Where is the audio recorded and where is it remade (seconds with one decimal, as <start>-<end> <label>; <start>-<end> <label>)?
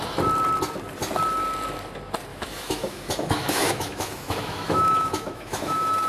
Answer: 0.0-2.3 recorded; 2.3-6.1 remade